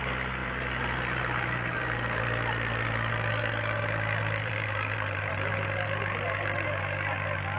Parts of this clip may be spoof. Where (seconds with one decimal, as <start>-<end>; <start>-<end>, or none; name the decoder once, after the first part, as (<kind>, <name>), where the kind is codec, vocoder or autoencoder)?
0.4-2.2 (vocoder, BigVGAN v2); 4.4-5.5